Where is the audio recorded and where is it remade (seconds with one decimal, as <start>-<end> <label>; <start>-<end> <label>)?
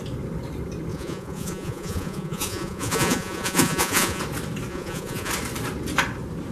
0.0-0.9 recorded; 0.9-4.2 remade; 4.2-4.7 recorded; 4.7-5.3 remade; 5.3-6.5 recorded